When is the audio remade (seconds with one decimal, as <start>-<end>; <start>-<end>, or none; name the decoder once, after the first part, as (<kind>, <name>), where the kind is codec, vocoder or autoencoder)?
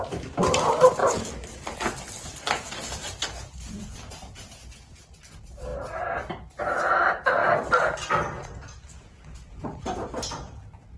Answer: none